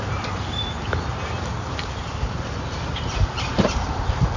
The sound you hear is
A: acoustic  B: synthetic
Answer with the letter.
B